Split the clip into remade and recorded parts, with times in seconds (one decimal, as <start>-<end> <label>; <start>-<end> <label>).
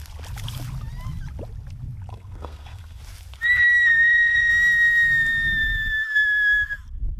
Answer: 0.0-2.1 recorded; 2.1-3.0 remade; 3.0-3.9 recorded; 3.9-4.5 remade; 4.5-7.2 recorded